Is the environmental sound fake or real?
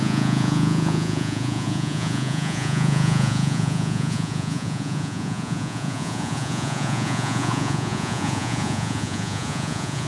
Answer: fake